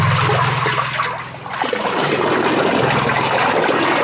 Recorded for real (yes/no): yes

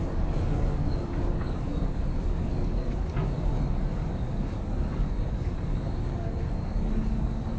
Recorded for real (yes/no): no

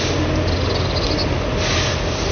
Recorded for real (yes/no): yes